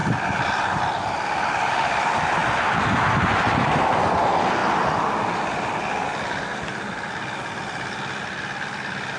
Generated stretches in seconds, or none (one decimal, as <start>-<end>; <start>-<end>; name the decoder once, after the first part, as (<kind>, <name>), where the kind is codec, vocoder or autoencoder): none